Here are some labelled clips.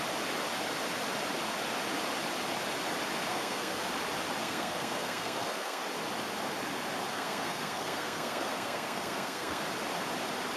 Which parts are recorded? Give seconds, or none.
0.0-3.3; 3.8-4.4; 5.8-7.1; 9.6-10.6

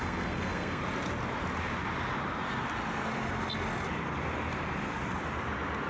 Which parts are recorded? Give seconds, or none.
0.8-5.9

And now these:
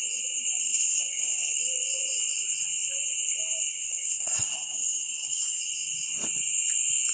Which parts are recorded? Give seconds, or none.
0.0-0.7; 1.5-3.7; 5.6-7.1

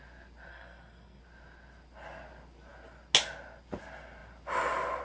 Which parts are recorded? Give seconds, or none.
0.0-0.5; 1.2-5.0

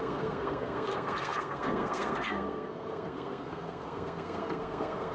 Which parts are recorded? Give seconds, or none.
none